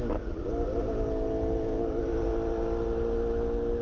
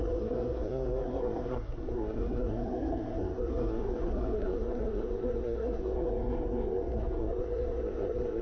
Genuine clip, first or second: first